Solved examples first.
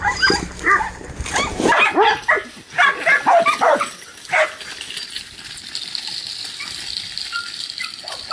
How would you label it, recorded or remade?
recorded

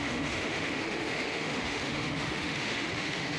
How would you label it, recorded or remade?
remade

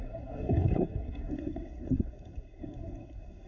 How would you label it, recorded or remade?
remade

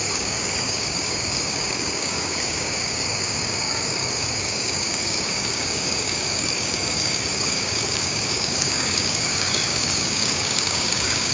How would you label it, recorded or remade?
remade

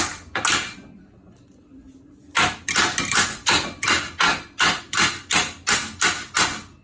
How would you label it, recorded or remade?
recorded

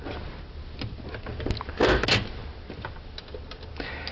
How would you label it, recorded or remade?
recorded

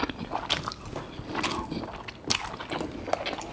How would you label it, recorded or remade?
recorded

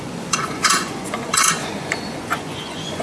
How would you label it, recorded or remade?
remade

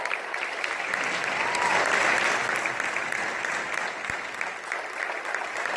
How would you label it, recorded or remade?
recorded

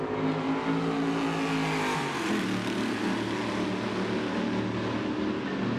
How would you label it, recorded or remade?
recorded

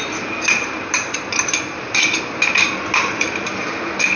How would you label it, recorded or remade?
remade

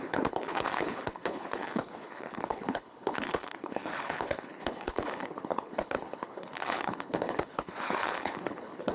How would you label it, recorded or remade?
remade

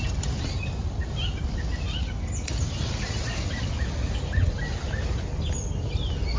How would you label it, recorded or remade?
recorded